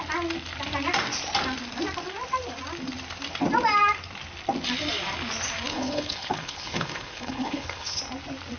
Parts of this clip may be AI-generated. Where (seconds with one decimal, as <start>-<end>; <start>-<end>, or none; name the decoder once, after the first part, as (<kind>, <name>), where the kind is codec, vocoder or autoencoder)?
5.7-8.0 (codec, HILCodec)